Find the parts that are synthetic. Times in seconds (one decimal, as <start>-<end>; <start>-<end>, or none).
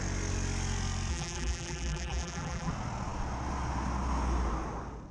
1.1-2.7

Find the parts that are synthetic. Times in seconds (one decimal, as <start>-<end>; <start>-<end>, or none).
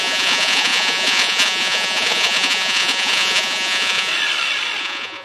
0.0-4.1; 4.8-5.2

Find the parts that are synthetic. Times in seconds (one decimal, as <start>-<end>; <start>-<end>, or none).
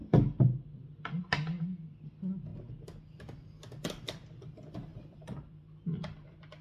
4.9-6.6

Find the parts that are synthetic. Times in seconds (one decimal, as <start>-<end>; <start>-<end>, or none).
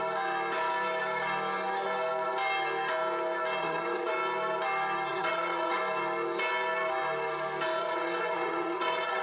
3.6-4.1; 5.1-5.8; 7.8-9.2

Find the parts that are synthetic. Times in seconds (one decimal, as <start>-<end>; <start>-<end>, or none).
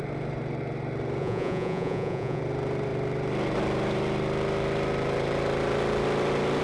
1.2-2.4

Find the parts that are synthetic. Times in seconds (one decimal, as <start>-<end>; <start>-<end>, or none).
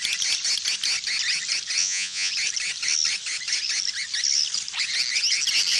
1.8-2.3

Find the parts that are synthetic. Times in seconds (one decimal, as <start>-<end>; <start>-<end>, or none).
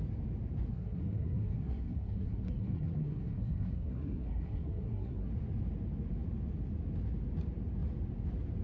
0.7-5.3